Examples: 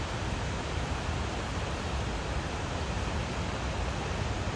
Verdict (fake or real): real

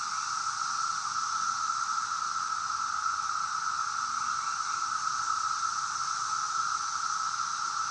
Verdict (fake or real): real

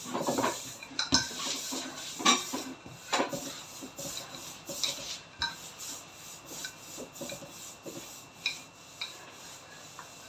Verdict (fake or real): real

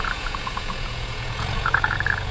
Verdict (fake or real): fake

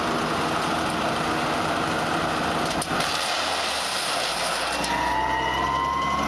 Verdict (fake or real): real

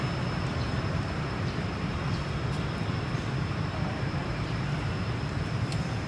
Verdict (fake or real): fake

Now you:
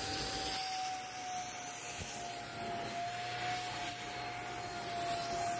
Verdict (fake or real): real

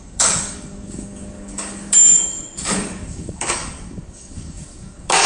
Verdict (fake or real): fake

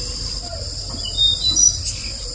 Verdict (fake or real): real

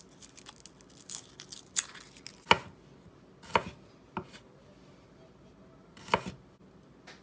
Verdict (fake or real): real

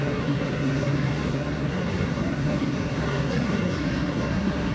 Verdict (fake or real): fake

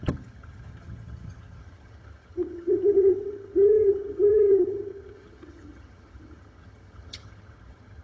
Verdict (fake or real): fake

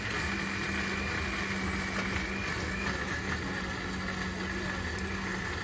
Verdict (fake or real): real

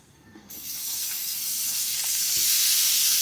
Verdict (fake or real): fake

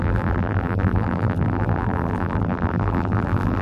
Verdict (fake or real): fake